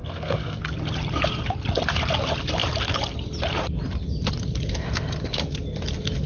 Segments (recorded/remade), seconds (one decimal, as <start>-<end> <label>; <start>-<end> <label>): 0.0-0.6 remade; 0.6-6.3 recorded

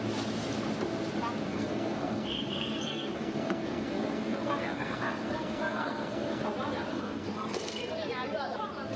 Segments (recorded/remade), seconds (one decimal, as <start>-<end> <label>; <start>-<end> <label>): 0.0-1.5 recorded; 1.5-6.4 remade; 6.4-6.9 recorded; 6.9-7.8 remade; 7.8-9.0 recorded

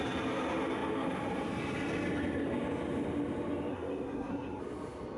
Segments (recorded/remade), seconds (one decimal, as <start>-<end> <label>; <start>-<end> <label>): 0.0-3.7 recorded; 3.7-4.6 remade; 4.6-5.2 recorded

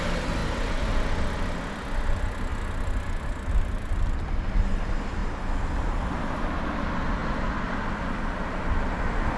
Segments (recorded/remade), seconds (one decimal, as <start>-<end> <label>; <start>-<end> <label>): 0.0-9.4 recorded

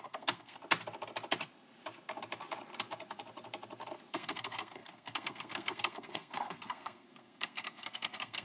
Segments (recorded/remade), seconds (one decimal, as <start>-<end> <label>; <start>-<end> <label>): 0.0-0.6 remade; 0.6-4.1 recorded; 4.1-8.4 remade